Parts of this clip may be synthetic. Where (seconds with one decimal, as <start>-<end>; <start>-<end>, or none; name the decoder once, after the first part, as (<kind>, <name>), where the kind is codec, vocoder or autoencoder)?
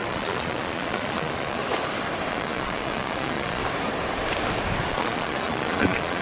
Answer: 0.0-1.6 (vocoder, Vocos); 2.3-3.6; 4.9-6.2